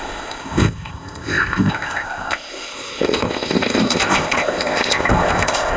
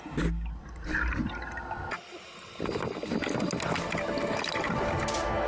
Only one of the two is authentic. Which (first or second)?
second